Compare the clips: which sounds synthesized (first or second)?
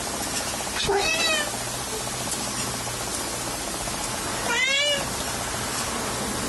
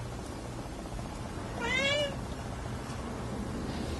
second